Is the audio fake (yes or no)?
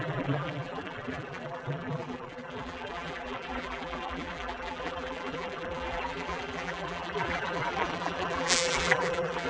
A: yes